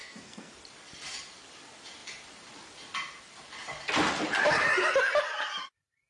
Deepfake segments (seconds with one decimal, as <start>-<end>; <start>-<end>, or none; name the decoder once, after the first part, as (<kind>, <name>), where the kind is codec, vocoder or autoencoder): 0.0-0.5 (codec, SNAC)